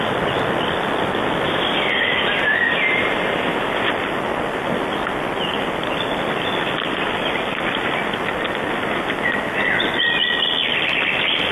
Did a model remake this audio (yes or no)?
no